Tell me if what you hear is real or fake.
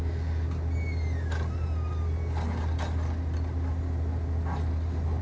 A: real